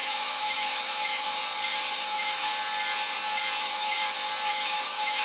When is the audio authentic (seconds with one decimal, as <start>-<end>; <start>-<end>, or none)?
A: 1.4-2.0; 2.5-3.6; 4.0-4.5